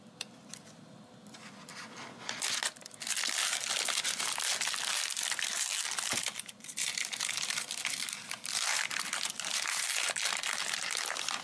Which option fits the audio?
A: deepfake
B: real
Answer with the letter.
B